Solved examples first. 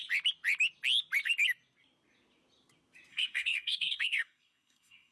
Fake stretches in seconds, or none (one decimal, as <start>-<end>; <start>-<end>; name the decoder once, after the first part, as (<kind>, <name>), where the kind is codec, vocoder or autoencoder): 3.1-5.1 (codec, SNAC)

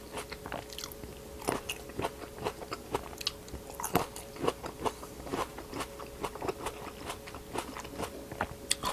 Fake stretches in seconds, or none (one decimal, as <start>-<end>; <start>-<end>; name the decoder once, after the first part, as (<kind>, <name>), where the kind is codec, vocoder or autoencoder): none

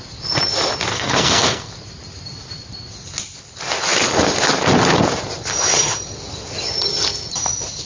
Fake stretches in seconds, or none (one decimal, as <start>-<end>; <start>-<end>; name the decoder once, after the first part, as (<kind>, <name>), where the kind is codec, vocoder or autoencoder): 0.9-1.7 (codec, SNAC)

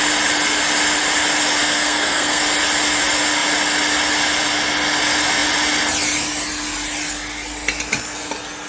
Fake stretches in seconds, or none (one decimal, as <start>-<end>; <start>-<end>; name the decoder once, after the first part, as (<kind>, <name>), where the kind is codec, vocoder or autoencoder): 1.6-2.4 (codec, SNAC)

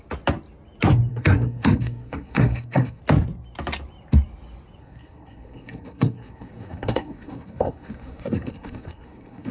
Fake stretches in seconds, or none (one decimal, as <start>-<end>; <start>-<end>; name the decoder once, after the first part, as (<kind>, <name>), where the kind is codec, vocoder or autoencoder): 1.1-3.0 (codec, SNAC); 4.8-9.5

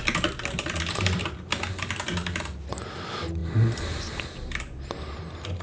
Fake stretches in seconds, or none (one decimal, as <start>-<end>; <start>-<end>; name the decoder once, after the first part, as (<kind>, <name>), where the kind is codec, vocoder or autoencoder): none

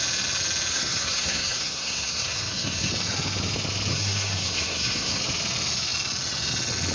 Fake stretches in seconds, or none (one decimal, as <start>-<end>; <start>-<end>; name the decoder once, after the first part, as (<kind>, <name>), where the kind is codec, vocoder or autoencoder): 0.7-2.9 (codec, SNAC); 3.9-5.2